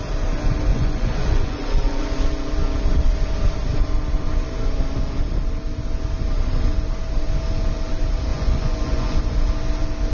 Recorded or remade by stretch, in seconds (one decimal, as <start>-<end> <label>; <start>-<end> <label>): 0.0-0.7 recorded; 0.7-2.0 remade; 2.0-8.3 recorded; 8.3-9.2 remade; 9.2-10.1 recorded